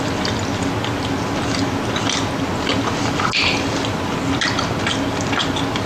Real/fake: real